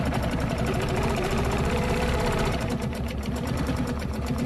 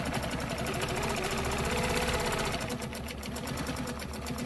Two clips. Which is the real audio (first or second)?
second